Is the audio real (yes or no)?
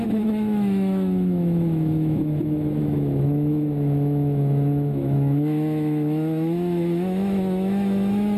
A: no